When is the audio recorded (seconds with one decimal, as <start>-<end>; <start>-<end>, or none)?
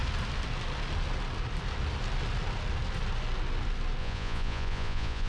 0.0-4.0